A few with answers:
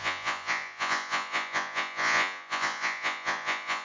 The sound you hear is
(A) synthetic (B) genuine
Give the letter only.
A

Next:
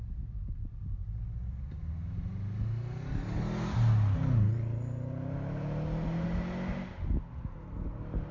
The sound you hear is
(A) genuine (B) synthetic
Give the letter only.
A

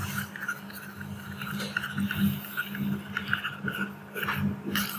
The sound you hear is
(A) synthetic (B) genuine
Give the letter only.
B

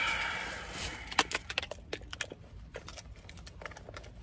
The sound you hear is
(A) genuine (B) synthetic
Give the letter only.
A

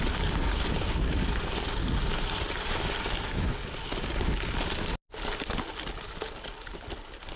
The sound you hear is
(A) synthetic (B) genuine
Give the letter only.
B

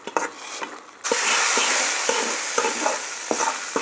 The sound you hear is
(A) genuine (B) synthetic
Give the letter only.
A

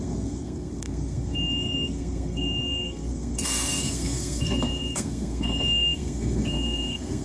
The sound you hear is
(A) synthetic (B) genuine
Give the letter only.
A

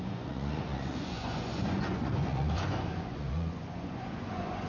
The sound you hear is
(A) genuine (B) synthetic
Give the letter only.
B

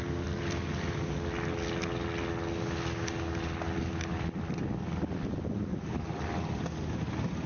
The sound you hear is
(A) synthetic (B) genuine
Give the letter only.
B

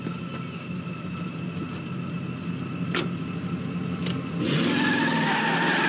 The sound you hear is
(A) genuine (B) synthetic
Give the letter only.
A